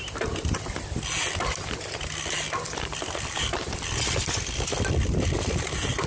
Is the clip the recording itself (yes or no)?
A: yes